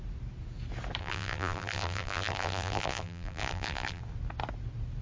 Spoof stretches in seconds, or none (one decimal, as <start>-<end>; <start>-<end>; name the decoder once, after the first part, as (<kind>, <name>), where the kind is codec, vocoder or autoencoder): 1.0-4.0 (vocoder, BigVGAN v2)